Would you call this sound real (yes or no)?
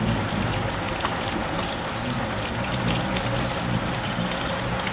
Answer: yes